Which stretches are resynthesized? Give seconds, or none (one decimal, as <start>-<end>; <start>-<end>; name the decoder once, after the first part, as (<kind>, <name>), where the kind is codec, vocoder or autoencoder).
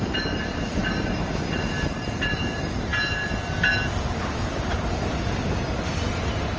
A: none